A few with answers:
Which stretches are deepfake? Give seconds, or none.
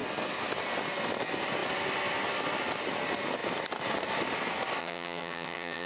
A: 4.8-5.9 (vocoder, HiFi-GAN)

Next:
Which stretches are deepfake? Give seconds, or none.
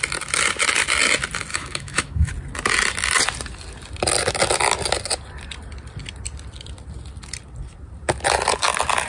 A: 1.5-2.3 (autoencoder, DAC-VAE)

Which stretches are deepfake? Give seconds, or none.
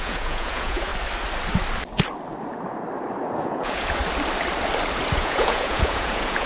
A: 0.0-0.9 (vocoder, Vocos); 3.4-4.0; 5.1-6.5